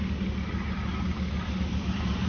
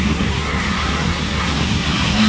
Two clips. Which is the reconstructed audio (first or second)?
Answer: second